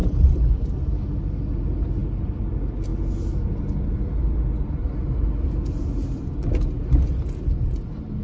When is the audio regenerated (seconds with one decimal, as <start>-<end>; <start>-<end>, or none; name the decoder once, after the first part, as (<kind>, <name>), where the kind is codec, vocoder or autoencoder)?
none